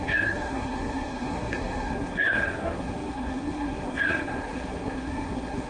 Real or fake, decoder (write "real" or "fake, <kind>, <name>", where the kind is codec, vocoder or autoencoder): fake, codec, SNAC